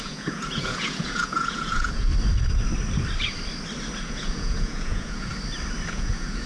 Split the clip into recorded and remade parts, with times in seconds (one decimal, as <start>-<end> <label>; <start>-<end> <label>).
0.0-2.1 remade; 2.1-4.0 recorded; 4.0-5.3 remade; 5.3-5.9 recorded; 5.9-6.5 remade